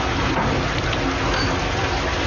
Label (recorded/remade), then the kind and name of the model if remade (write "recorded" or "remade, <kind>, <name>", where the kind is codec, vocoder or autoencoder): recorded